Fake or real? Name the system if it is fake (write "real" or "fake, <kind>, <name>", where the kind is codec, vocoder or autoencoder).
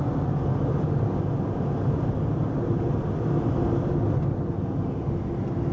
real